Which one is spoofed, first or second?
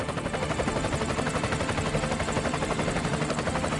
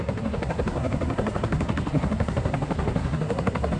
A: second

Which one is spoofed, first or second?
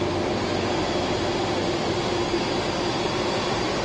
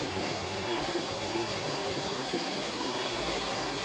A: second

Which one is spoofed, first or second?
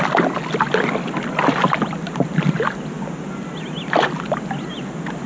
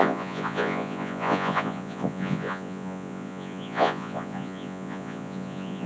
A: second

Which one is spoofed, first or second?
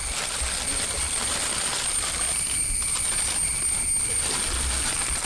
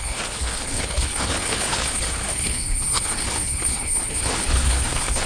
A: second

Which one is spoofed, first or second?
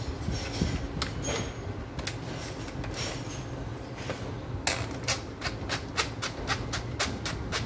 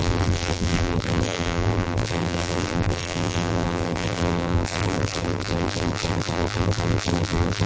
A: second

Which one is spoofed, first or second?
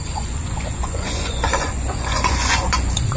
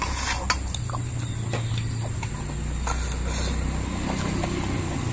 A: first